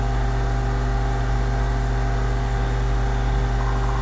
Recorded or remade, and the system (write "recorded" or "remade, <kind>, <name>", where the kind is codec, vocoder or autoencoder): recorded